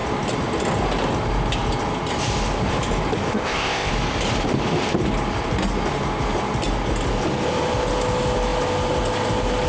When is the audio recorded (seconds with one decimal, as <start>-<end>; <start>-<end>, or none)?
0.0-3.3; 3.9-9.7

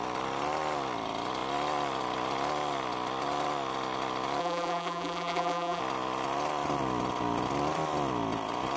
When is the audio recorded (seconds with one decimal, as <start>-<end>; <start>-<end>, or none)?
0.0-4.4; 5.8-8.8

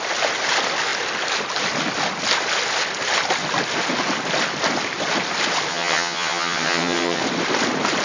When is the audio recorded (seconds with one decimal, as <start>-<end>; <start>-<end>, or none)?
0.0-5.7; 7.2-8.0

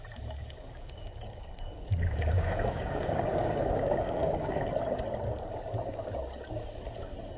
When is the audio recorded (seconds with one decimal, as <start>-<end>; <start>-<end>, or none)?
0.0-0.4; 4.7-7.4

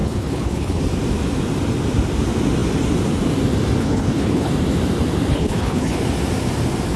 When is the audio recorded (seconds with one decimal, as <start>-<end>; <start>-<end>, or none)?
0.8-3.8; 4.5-5.3; 6.0-7.0

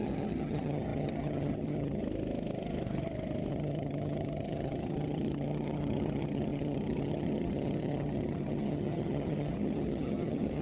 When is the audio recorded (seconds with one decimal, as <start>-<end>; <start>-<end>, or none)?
2.0-3.5

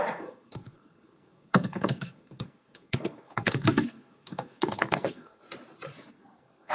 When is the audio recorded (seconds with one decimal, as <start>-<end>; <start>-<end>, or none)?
5.4-6.1

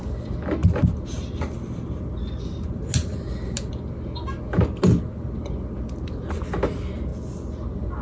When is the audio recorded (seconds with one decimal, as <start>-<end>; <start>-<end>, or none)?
0.0-8.0